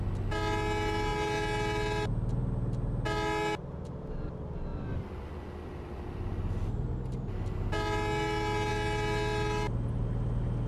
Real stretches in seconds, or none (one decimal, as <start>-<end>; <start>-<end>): 0.0-10.7